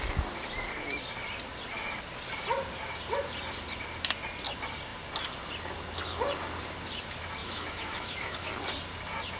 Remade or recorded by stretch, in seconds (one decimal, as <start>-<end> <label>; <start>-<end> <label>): 0.0-7.4 recorded; 7.4-8.5 remade; 8.5-9.4 recorded